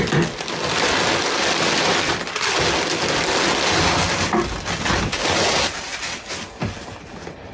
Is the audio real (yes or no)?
yes